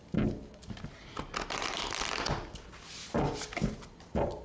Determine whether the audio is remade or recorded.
recorded